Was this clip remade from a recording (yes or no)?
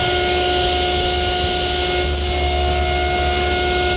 no